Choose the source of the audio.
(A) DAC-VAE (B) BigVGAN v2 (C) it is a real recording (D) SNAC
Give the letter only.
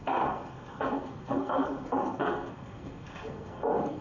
D